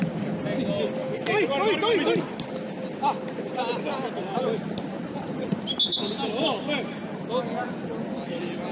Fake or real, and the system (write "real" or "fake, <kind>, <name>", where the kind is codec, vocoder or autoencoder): real